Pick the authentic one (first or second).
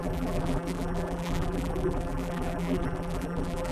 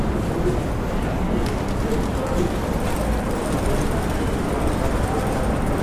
second